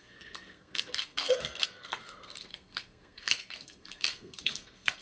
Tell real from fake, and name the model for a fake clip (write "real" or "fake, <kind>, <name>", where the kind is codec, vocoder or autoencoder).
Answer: fake, codec, SNAC